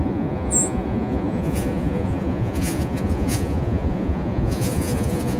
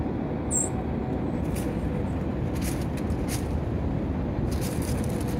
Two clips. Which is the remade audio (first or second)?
first